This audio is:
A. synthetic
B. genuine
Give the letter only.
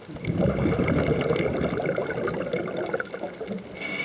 B